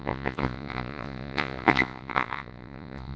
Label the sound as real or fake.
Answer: fake